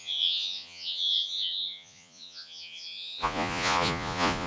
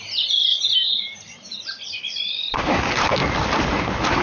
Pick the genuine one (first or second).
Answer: second